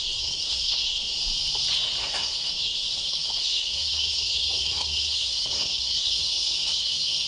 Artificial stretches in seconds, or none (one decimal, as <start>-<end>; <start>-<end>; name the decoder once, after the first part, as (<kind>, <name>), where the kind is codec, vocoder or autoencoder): 0.0-1.2 (codec, SNAC); 2.0-7.3